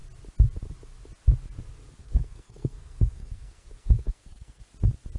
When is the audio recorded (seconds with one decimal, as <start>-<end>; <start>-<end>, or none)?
0.0-2.0; 4.6-5.2